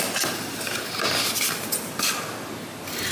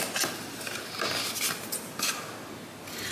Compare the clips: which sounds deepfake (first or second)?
first